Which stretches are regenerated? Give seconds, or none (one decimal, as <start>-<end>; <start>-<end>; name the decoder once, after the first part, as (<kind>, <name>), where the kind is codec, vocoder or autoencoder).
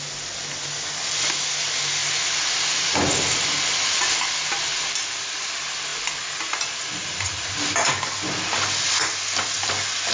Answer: none